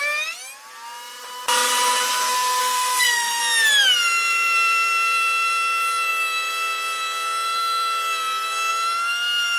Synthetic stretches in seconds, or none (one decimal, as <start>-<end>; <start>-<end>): 2.6-3.4